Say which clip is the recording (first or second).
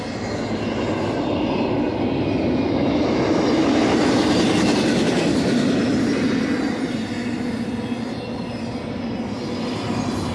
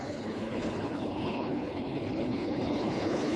first